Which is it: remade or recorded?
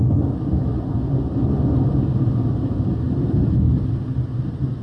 recorded